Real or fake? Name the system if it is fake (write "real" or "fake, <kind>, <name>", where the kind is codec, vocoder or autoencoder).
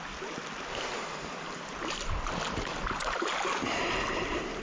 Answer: real